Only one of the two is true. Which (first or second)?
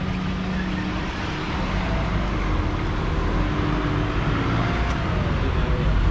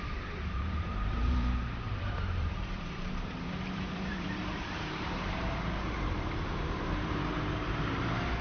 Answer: first